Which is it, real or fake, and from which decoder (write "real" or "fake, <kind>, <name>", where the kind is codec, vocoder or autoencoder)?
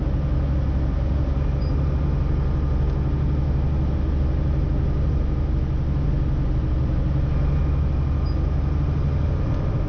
real